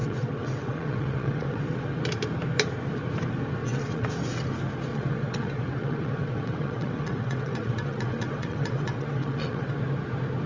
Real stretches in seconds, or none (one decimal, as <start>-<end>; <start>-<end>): 2.0-3.6; 4.1-4.9; 9.8-10.5